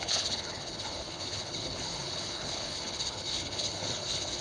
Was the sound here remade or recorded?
remade